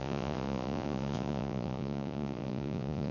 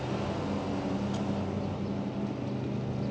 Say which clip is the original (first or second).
second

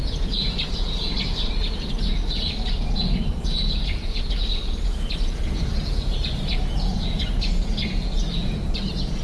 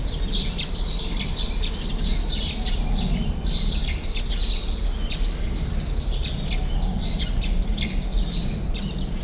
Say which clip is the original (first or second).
second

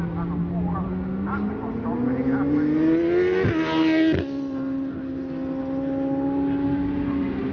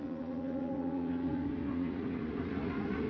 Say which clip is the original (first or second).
first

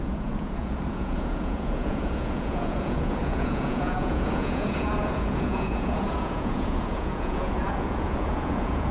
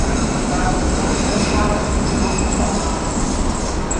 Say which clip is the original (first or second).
second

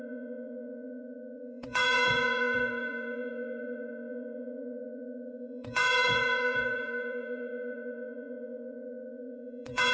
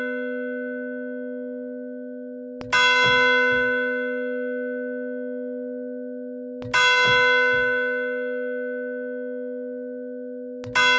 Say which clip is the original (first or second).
second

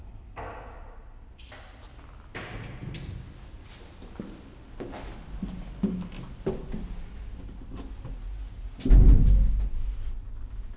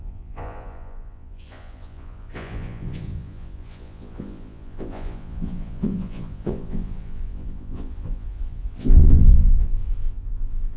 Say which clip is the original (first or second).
first